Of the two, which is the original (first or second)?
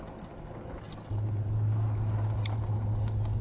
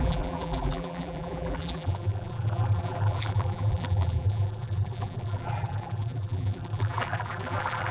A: first